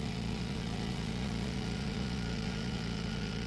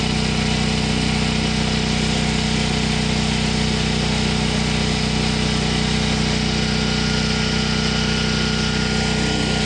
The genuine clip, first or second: second